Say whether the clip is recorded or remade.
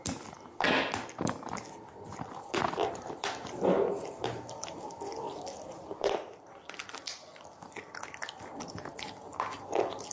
recorded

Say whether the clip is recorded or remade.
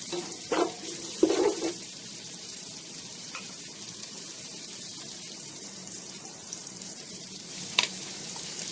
remade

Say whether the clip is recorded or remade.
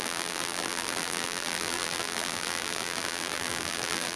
remade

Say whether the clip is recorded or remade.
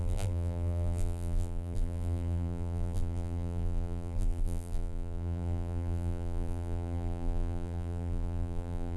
remade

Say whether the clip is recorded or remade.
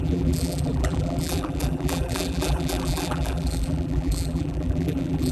remade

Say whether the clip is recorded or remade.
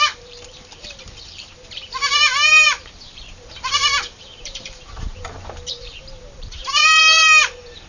remade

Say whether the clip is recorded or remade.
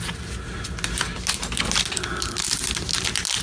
recorded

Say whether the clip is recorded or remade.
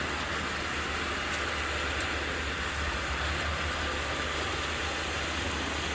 recorded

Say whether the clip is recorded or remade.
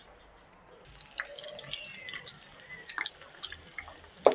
recorded